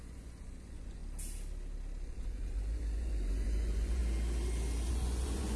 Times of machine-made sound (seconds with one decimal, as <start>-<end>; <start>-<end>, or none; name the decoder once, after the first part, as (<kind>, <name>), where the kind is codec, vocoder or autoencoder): 0.0-1.0 (vocoder, Vocos); 2.0-4.0; 4.9-5.6